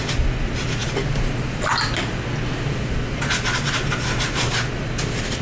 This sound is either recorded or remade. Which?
recorded